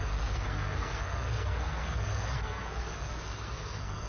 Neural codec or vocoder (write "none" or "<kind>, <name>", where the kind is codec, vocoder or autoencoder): codec, SNAC